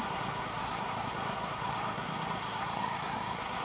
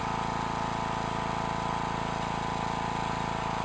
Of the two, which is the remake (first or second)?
first